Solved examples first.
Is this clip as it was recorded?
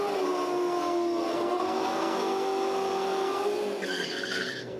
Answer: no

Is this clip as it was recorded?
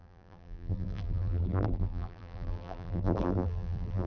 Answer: no